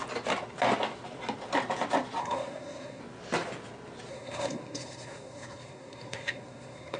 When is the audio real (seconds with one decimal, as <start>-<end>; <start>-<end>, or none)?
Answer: 0.0-2.2; 3.0-4.1